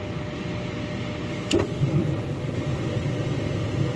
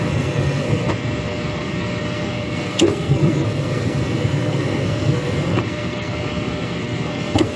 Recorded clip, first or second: first